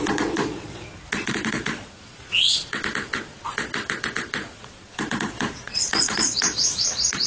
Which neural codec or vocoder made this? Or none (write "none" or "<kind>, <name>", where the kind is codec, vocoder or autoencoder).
vocoder, Vocos